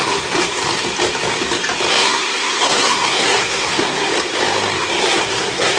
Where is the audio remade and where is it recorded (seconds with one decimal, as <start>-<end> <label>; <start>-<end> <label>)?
0.0-0.6 remade; 0.6-1.9 recorded; 1.9-4.1 remade; 4.1-5.0 recorded; 5.0-5.8 remade